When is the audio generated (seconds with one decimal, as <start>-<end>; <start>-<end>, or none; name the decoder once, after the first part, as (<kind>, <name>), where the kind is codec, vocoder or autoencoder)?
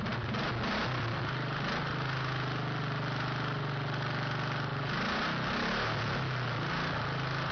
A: none